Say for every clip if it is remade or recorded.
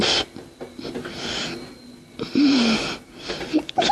recorded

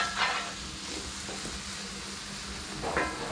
recorded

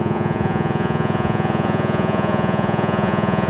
remade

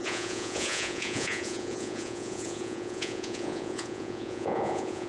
remade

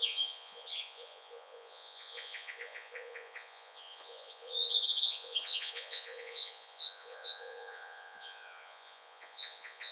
remade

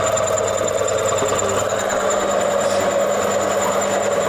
recorded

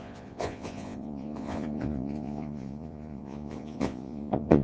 remade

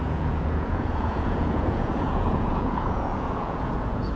remade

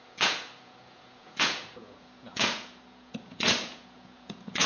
remade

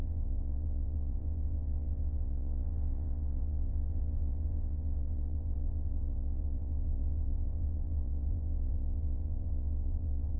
remade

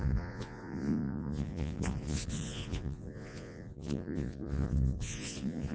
remade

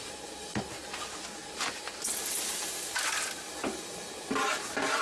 recorded